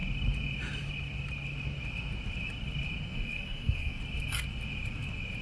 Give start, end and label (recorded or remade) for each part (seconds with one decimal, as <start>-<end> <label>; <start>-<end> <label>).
0.0-3.1 recorded; 3.1-4.0 remade; 4.0-5.4 recorded